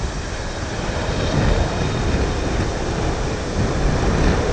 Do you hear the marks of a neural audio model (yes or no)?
no